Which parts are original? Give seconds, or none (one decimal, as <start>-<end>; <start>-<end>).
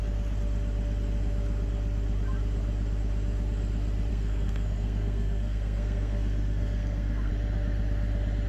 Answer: 0.0-4.1; 7.3-8.5